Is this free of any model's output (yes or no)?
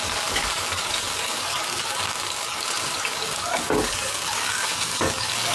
no